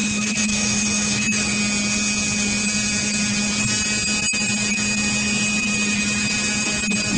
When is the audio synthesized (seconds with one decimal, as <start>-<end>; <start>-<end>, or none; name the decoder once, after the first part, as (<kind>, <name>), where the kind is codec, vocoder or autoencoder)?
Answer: 0.0-1.6 (autoencoder, DAC-VAE)